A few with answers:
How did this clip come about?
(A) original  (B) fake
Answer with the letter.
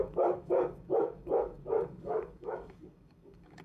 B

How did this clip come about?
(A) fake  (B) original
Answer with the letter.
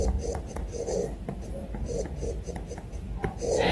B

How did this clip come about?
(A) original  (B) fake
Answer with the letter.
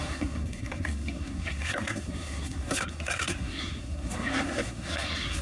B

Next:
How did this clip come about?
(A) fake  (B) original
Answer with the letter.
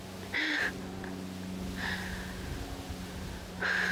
B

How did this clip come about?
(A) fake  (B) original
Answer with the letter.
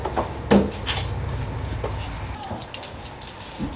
B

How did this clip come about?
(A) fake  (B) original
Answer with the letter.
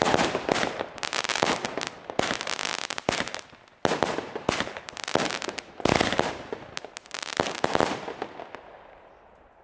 B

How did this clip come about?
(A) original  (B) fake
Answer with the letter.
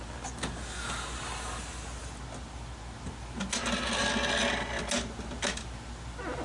A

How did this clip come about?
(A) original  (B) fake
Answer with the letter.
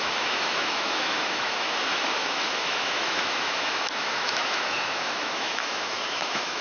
B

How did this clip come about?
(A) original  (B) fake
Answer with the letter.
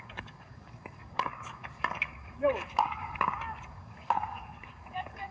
B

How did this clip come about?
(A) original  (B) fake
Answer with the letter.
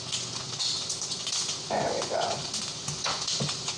B